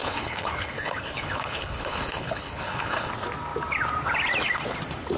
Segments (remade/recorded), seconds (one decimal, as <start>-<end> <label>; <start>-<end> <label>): 0.0-3.1 remade; 3.1-5.2 recorded